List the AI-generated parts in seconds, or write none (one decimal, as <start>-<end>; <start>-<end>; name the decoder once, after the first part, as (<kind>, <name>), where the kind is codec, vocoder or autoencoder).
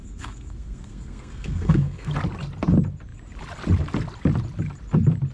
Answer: 0.0-2.1 (codec, SNAC)